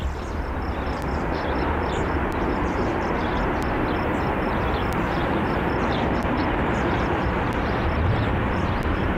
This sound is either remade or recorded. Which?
remade